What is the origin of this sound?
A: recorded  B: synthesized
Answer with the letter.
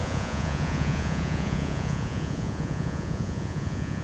B